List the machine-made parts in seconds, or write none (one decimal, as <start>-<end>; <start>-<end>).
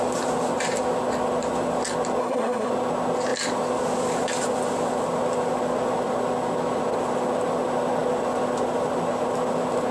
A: 2.2-2.7